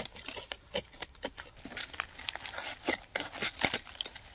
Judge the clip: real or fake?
real